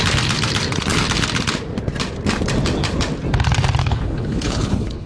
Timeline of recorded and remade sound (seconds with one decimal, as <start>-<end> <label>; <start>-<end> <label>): 0.0-3.8 recorded; 3.8-5.1 remade